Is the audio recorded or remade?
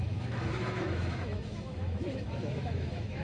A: remade